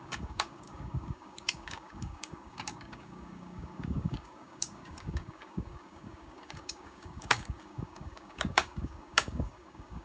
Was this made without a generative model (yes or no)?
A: no